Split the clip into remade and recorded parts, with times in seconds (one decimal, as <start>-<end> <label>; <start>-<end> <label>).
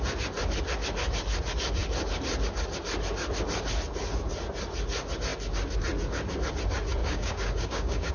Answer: 0.0-7.0 recorded; 7.0-8.1 remade